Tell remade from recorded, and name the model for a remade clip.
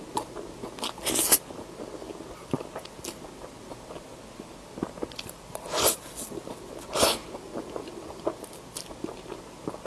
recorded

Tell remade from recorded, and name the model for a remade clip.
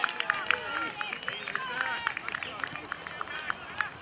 recorded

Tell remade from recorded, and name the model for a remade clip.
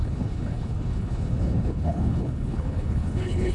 remade, codec, HILCodec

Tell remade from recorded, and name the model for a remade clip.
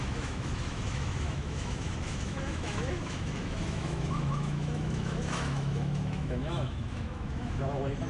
remade, autoencoder, DAC-VAE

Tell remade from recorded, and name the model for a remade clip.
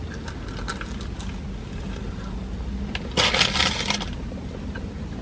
recorded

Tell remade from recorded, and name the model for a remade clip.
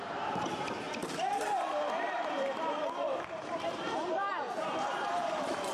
remade, vocoder, BigVGAN v2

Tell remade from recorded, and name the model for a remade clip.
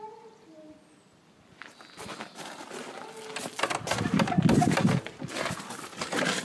recorded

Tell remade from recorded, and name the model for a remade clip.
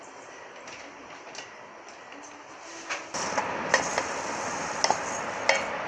recorded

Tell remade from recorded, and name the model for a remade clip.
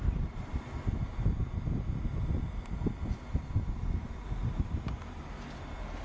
recorded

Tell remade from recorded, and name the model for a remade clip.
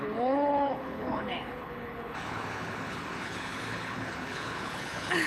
remade, codec, HILCodec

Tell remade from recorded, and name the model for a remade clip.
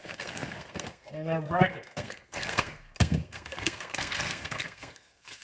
remade, codec, SNAC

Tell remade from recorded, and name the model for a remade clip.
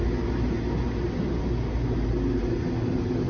recorded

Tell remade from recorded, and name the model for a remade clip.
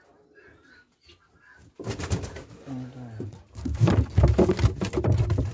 recorded